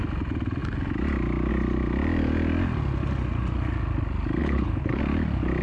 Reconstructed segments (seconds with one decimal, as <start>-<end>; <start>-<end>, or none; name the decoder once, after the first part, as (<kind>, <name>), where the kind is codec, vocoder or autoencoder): 4.4-5.0 (codec, HILCodec)